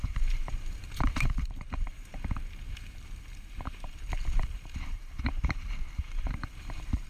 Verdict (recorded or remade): remade